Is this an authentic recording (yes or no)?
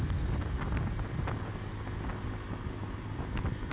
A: yes